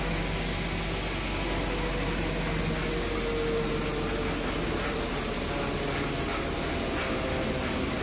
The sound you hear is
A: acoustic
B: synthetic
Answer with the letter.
A